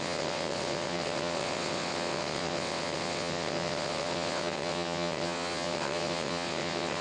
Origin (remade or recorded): remade